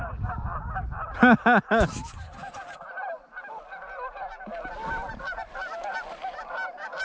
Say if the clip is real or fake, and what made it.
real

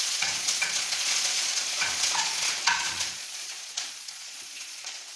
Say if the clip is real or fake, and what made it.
fake, vocoder, Vocos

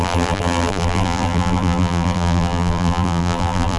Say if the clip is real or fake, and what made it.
fake, vocoder, BigVGAN v2